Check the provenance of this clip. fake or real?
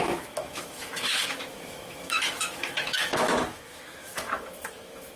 fake